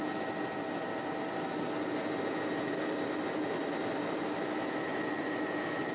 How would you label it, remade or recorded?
recorded